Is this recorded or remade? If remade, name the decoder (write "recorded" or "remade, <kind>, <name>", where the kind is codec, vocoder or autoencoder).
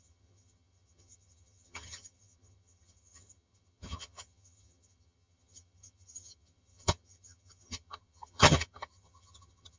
remade, vocoder, HiFi-GAN